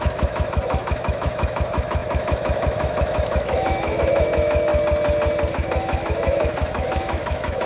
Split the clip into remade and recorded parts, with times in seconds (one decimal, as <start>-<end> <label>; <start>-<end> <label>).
0.0-4.7 remade; 4.7-5.5 recorded; 5.5-7.7 remade